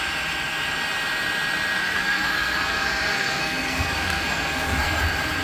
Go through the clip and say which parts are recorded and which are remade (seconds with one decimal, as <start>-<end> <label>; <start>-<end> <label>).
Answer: 0.0-1.8 recorded; 1.8-5.0 remade; 5.0-5.4 recorded